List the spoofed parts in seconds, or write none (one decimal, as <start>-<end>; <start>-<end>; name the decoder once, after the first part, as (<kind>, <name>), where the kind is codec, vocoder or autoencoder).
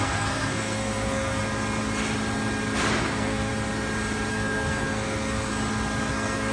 0.0-1.4 (codec, SNAC); 3.0-3.5; 4.3-5.5; 6.0-6.5